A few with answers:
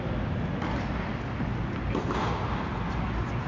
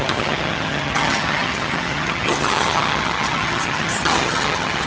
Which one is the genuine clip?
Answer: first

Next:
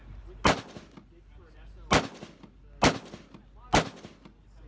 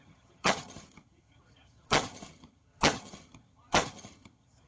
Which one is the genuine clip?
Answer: first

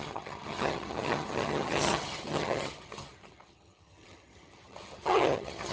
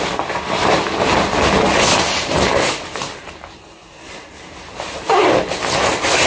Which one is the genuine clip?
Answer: second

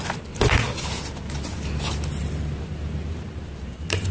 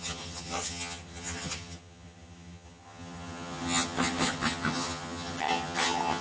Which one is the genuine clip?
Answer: first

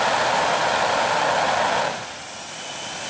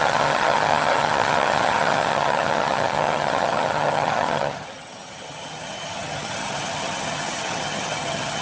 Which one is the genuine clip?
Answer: first